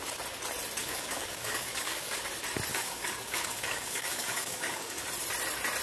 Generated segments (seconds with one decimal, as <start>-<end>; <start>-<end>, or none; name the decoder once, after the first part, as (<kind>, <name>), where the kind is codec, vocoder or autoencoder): 0.8-2.2 (codec, DAC); 2.7-5.0